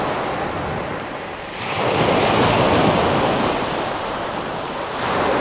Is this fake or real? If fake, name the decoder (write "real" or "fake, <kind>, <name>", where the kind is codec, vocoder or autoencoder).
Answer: real